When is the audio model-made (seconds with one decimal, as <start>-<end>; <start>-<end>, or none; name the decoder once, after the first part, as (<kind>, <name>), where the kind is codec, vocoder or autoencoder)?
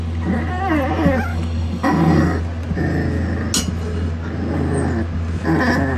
1.3-2.4 (codec, DAC)